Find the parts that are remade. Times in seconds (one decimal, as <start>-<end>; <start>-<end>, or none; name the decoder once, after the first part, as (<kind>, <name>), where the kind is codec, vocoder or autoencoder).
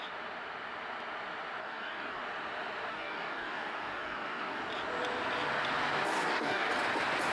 1.6-2.2 (codec, DAC); 2.9-4.6; 6.1-6.7